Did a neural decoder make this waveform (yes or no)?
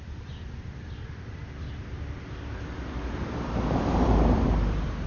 yes